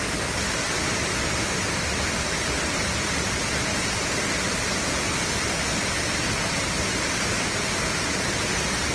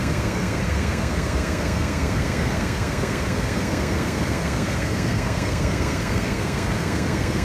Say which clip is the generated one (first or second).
second